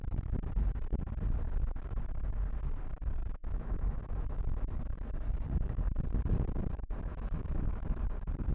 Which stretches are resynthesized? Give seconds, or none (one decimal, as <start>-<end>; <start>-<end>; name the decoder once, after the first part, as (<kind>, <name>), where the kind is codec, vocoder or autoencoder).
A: 3.2-4.4 (autoencoder, DAC-VAE); 7.1-8.0